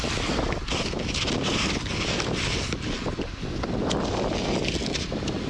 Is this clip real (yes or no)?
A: yes